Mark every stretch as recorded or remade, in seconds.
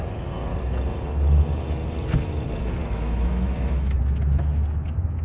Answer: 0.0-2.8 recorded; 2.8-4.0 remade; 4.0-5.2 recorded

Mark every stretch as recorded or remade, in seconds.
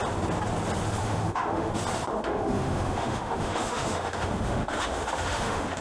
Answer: 0.0-1.0 recorded; 1.0-1.7 remade; 1.7-2.1 recorded; 2.1-5.8 remade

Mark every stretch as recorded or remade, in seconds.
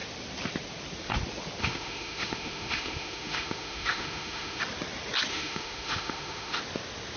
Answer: 0.0-1.6 recorded; 1.6-4.6 remade; 4.6-5.3 recorded; 5.3-6.6 remade; 6.6-7.2 recorded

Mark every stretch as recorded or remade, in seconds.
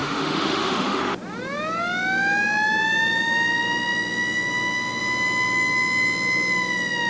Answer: 0.0-1.0 remade; 1.0-7.1 recorded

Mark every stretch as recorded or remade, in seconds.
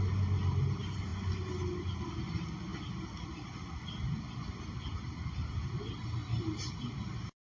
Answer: 0.0-7.4 recorded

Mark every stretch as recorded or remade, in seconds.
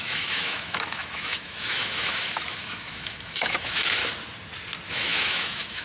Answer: 0.0-4.0 remade; 4.0-4.9 recorded; 4.9-5.8 remade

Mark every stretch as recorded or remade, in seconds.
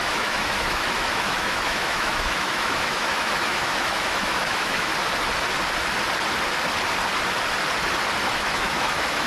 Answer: 0.0-4.9 remade; 4.9-8.2 recorded; 8.2-9.3 remade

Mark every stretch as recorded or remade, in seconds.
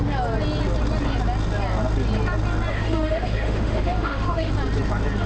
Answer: 0.0-2.7 recorded; 2.7-4.5 remade; 4.5-5.3 recorded